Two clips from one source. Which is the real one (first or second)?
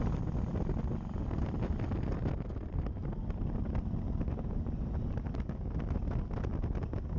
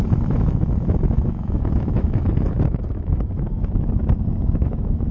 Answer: first